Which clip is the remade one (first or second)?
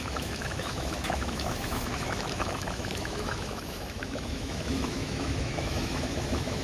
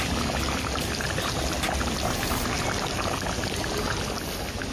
first